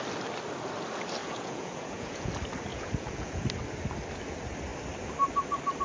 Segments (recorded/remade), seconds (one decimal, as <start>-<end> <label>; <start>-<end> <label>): 0.0-1.2 recorded; 1.2-2.3 remade; 2.3-2.7 recorded; 2.7-3.4 remade; 3.4-5.8 recorded